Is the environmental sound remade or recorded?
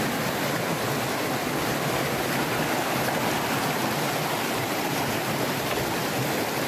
recorded